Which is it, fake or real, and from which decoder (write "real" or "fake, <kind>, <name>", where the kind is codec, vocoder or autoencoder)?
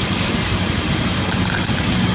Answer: fake, vocoder, BigVGAN v2